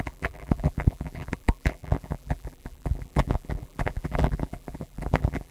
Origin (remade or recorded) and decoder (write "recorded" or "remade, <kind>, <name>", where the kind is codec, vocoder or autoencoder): remade, vocoder, BigVGAN v2